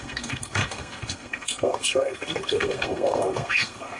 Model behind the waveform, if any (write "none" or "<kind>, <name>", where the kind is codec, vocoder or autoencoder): codec, SNAC